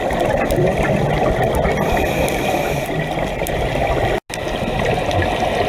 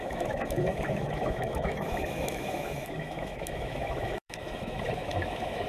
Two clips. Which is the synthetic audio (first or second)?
second